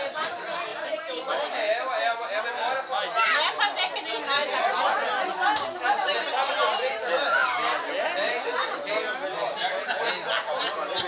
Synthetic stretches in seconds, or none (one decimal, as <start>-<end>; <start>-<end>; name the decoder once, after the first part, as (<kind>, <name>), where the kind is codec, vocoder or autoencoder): none